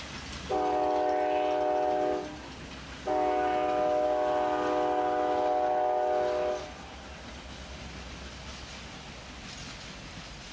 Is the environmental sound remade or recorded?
recorded